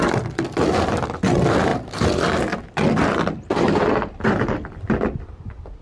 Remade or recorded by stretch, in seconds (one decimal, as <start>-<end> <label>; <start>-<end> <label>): 0.0-5.8 recorded